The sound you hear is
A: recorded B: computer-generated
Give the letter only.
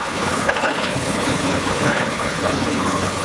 B